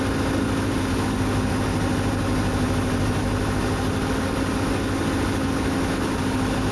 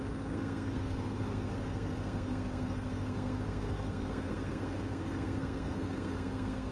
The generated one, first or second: second